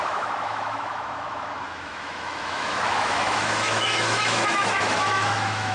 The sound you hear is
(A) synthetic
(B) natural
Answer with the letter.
A